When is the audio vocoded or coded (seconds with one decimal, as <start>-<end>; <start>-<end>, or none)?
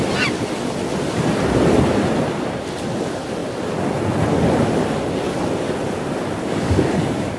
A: 6.4-7.4